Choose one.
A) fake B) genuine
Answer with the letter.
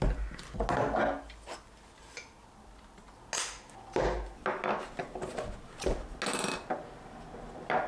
B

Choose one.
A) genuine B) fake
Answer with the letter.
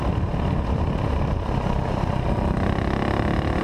A